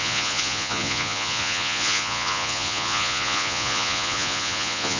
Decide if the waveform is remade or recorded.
remade